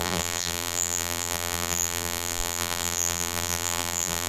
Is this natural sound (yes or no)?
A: no